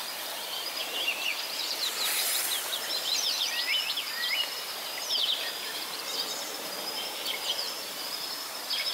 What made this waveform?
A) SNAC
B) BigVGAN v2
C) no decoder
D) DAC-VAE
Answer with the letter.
B